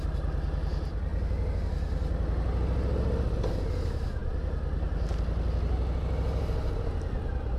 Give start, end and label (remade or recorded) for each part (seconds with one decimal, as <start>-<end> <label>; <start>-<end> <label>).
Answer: 0.0-4.2 recorded; 4.2-5.2 remade; 5.2-7.6 recorded

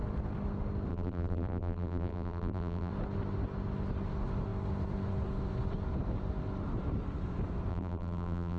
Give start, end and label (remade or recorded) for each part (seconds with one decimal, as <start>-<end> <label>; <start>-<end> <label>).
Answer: 0.0-0.9 recorded; 0.9-2.9 remade; 2.9-7.7 recorded; 7.7-8.6 remade

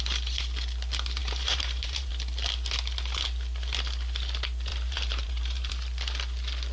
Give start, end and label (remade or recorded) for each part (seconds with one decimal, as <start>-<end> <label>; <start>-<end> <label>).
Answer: 0.0-1.2 recorded; 1.2-2.1 remade; 2.1-4.7 recorded; 4.7-5.7 remade; 5.7-6.7 recorded